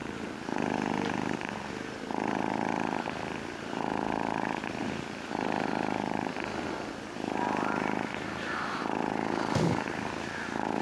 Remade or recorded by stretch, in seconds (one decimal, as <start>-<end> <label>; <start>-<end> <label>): 0.0-10.8 recorded